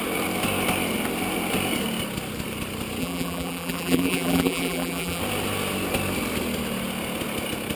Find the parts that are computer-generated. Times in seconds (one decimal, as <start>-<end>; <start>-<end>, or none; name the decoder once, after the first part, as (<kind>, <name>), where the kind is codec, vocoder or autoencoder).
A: 3.0-5.2 (vocoder, BigVGAN v2)